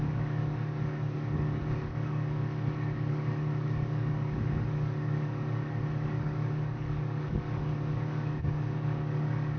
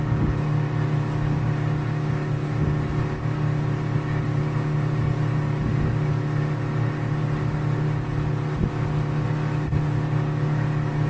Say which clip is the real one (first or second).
second